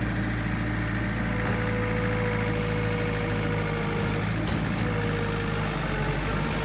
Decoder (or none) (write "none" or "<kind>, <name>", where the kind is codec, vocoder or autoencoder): none